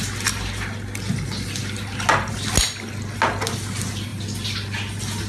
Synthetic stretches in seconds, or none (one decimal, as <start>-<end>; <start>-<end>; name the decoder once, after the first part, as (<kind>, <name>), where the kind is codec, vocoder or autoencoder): none

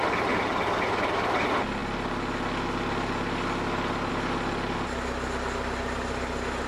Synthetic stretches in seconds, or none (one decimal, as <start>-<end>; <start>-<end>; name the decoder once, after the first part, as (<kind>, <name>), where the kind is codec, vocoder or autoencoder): none

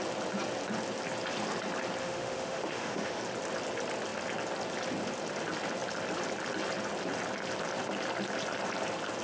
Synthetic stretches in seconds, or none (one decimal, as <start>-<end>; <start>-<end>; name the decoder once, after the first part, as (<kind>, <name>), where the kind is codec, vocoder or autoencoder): 2.0-3.2 (autoencoder, DAC-VAE)